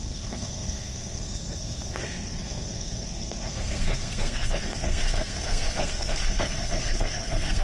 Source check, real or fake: fake